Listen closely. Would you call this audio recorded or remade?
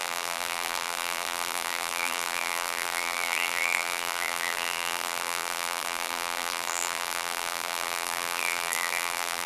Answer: remade